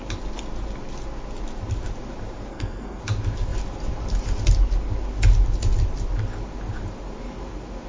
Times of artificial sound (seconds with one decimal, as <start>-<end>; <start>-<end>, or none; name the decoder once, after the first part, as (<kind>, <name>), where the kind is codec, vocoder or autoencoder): 2.5-3.0 (codec, SNAC)